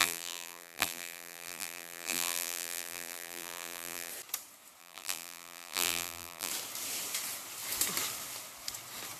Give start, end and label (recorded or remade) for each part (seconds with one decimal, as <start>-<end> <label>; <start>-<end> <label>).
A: 0.0-4.1 remade; 4.1-4.8 recorded; 4.8-6.5 remade; 6.5-9.2 recorded